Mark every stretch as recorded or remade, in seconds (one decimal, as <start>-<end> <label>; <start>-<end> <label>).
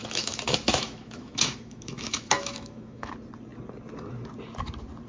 0.0-3.1 remade; 3.1-5.1 recorded